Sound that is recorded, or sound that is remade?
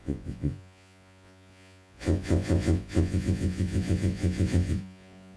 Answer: remade